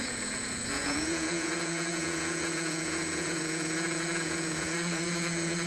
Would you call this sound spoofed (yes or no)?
yes